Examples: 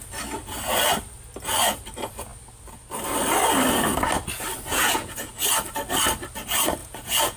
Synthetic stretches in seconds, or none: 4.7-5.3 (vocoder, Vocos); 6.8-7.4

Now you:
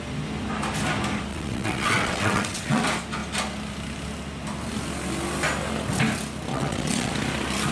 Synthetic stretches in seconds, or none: 1.3-2.8 (vocoder, WaveNeXt); 6.5-7.1

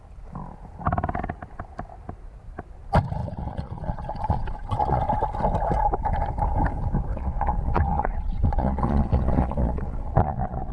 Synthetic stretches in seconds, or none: 3.2-5.0 (vocoder, Vocos); 7.1-10.7

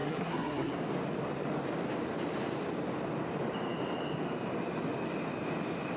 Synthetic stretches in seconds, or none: 0.0-0.7 (codec, SNAC)

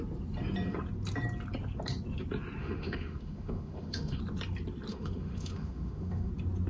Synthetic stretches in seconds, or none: 2.6-4.2 (autoencoder, DAC-VAE); 4.9-6.3

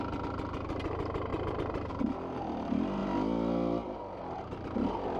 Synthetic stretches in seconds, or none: 1.3-1.9 (vocoder, BigVGAN v2)